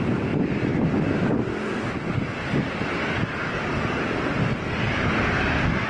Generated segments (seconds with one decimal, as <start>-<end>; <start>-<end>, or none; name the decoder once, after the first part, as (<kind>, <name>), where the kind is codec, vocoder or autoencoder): none